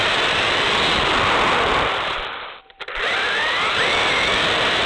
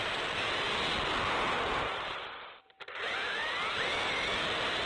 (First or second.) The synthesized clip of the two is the first